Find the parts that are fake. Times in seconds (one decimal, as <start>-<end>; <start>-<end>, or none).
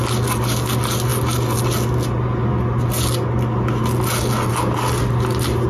none